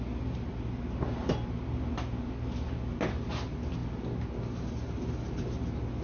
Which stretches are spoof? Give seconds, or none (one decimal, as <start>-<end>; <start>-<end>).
none

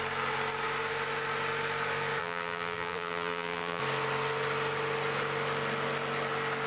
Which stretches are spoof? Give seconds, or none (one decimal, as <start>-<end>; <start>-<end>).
2.2-3.8